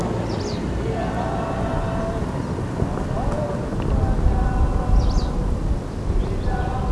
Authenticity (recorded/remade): recorded